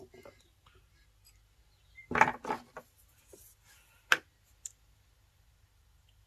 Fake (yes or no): no